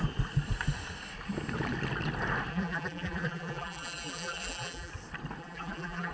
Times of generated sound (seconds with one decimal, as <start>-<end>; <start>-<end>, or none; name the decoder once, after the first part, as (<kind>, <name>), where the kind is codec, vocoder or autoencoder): 2.5-4.9 (vocoder, BigVGAN v2); 5.4-6.1